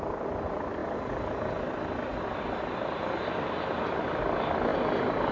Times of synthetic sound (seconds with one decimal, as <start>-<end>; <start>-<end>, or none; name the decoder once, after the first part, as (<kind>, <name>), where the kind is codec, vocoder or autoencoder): none